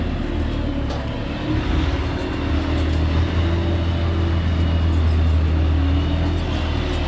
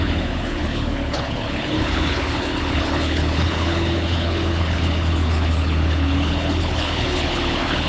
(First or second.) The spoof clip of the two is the second